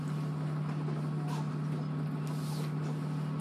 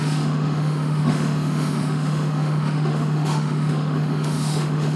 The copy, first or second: second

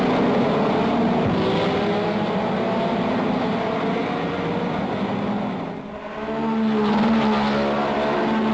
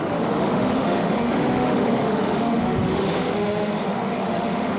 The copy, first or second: second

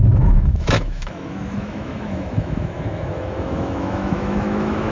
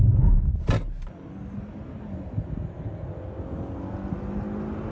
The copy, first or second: first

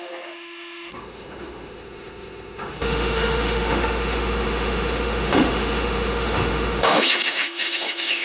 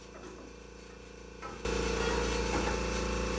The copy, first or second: first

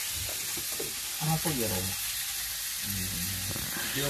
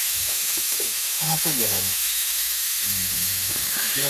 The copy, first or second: second